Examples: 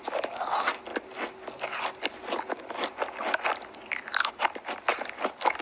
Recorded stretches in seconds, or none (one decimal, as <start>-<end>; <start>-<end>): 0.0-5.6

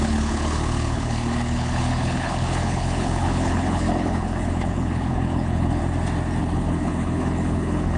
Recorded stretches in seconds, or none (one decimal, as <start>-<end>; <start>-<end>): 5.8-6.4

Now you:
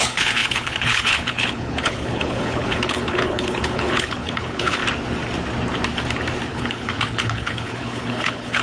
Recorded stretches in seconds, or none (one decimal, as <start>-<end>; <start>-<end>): 4.8-6.5